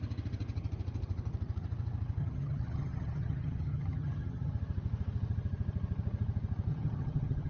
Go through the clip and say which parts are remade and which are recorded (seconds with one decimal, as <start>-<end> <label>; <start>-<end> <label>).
0.0-2.2 recorded; 2.2-4.5 remade; 4.5-6.7 recorded; 6.7-7.5 remade